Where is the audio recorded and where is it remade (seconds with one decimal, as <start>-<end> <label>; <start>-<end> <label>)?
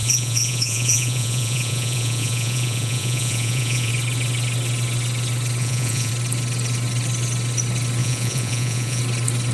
0.0-3.9 remade; 3.9-5.6 recorded; 5.6-6.1 remade; 6.1-8.0 recorded; 8.0-9.0 remade; 9.0-9.5 recorded